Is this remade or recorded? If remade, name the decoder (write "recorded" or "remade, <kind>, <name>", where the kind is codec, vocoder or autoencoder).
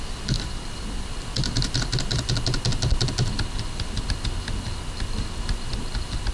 recorded